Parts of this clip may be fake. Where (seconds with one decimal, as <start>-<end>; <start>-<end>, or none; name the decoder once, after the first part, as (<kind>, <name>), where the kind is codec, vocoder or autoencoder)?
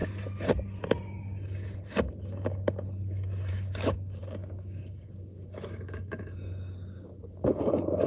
3.5-8.1 (codec, DAC)